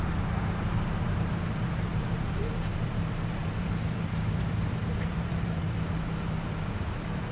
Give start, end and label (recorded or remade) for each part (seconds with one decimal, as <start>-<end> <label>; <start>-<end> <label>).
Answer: 0.0-5.6 remade; 5.6-6.8 recorded; 6.8-7.3 remade